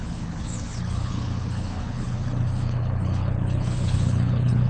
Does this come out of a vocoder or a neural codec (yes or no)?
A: yes